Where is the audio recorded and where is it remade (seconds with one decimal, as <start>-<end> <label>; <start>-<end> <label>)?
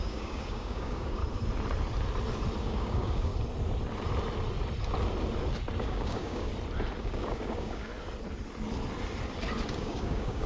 0.0-1.2 remade; 1.2-2.6 recorded; 2.6-3.3 remade; 3.3-5.8 recorded; 5.8-6.5 remade; 6.5-7.0 recorded; 7.0-7.9 remade; 7.9-9.7 recorded; 9.7-10.5 remade